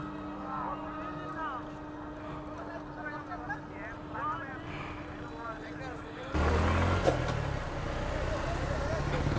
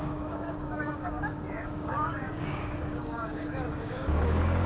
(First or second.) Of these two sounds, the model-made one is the second